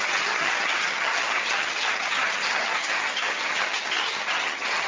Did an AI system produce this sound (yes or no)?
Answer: yes